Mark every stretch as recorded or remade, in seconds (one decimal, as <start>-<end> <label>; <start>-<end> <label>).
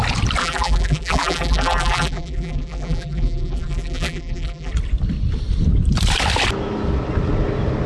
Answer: 0.0-0.4 recorded; 0.4-4.7 remade; 4.7-7.9 recorded